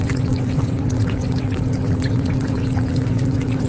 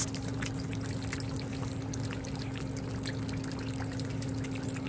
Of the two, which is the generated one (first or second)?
first